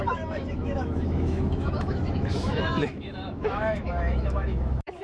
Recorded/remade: remade